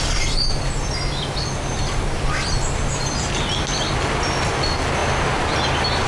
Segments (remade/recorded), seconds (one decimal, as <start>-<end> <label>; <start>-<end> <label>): 0.0-6.1 recorded